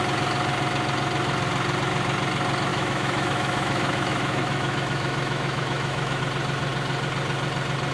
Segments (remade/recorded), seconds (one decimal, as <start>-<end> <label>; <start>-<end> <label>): 0.0-2.7 recorded; 2.7-6.2 remade; 6.2-7.9 recorded